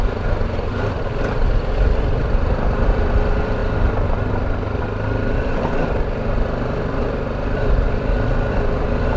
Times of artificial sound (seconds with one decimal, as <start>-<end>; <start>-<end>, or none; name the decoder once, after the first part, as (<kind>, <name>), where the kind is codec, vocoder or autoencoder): none